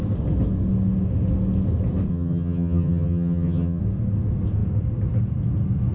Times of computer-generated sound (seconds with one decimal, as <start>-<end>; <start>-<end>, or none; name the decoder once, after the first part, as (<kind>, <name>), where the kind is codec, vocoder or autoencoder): 2.1-3.8 (vocoder, HiFi-GAN)